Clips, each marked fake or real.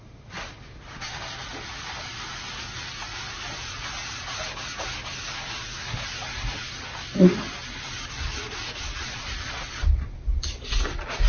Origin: real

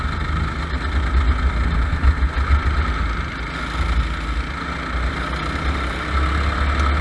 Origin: real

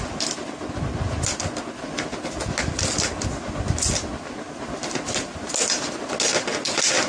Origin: real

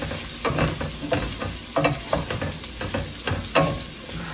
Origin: real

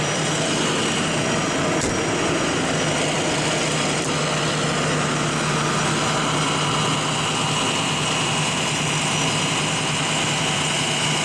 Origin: real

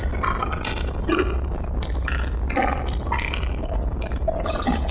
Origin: real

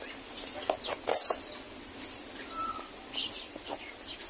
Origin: real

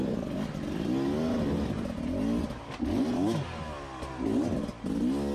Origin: real